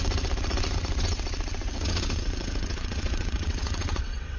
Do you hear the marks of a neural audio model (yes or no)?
yes